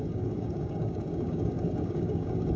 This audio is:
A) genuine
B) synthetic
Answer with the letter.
B